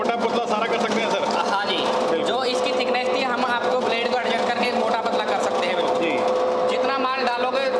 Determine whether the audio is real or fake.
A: real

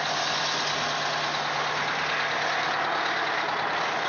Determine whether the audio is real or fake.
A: real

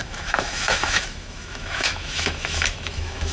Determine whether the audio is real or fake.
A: fake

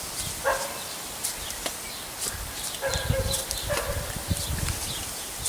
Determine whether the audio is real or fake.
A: real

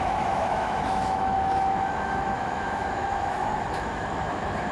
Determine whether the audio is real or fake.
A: fake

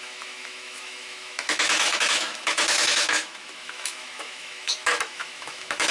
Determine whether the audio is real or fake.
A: fake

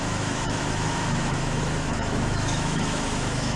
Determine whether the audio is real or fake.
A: fake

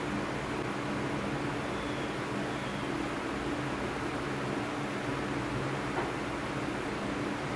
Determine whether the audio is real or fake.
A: real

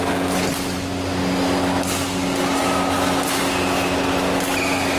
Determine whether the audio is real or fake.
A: real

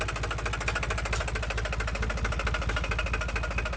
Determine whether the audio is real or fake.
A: real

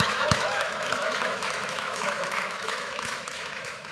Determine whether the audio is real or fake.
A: fake